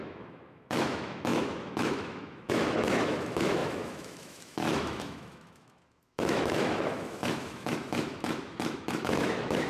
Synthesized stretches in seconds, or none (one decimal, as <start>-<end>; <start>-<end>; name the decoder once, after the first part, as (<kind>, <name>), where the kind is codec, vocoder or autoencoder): 0.0-9.7 (autoencoder, DAC-VAE)